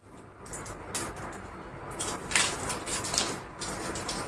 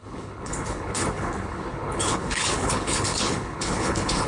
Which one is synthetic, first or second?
second